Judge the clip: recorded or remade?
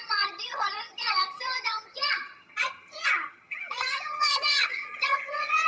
remade